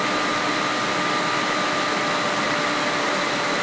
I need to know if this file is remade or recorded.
recorded